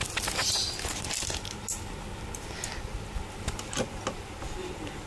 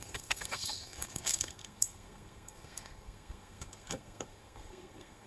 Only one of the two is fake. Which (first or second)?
second